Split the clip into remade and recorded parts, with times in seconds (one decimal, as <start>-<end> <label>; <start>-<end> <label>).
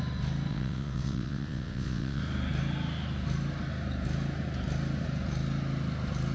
0.0-0.5 recorded; 0.5-2.2 remade; 2.2-6.3 recorded